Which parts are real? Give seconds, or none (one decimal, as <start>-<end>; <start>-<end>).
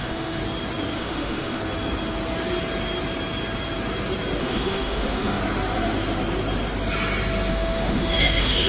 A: 0.4-1.0; 1.6-4.4; 5.4-7.5